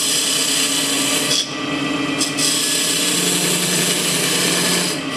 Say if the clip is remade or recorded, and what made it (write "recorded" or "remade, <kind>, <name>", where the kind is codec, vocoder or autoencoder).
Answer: recorded